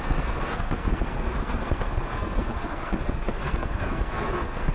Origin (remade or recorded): remade